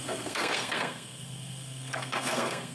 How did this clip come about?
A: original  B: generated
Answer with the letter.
B